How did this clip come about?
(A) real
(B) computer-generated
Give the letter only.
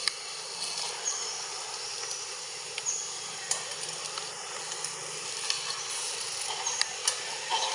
A